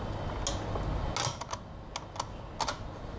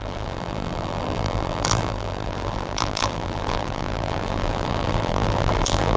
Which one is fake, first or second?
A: second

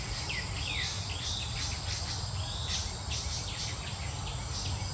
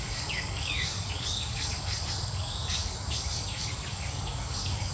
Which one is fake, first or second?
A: second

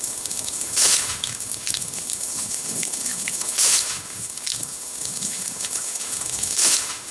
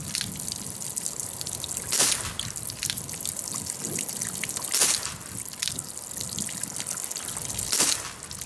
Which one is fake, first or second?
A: first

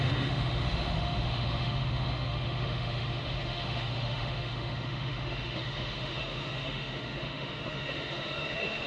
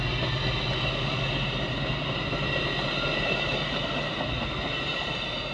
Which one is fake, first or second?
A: first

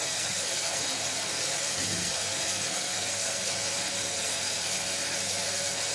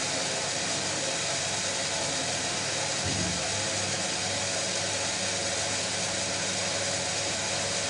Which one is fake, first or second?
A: first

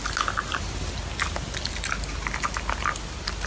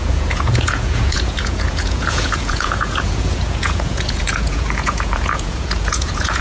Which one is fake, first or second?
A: second